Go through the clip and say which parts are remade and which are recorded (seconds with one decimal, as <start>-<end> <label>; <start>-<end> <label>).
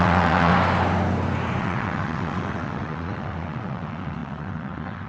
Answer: 0.0-0.5 remade; 0.5-1.6 recorded; 1.6-5.1 remade